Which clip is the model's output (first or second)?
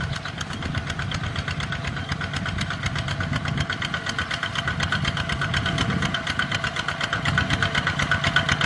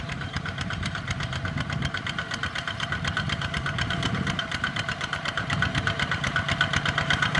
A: second